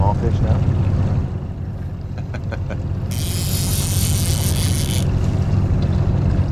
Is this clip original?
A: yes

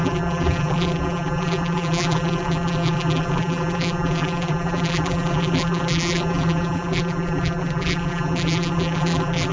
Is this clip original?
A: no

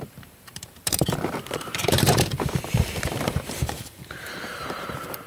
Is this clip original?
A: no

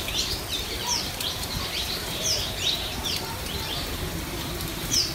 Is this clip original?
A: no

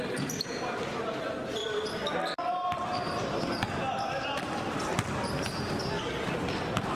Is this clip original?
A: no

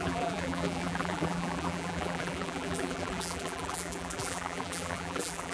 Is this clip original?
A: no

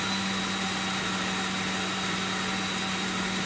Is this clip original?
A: yes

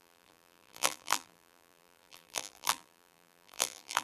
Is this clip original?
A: no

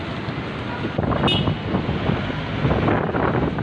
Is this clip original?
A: yes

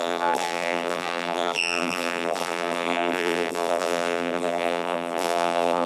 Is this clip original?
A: no